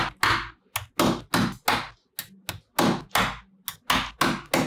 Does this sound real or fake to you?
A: real